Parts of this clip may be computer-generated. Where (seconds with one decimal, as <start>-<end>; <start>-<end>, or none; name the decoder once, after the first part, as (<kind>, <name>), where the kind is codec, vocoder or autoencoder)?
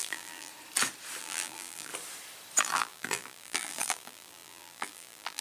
0.0-0.5 (vocoder, BigVGAN v2); 1.2-1.9; 2.6-5.4